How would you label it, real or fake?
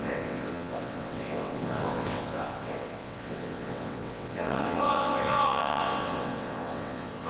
fake